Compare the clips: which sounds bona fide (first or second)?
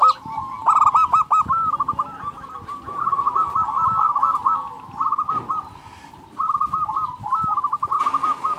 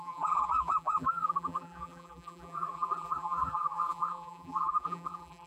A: first